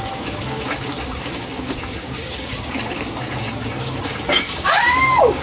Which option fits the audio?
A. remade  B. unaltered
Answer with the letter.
A